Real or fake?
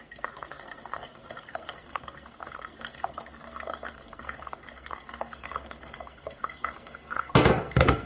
fake